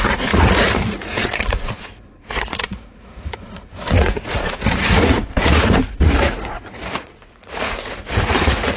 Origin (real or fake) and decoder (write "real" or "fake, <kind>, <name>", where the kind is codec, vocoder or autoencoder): fake, vocoder, Vocos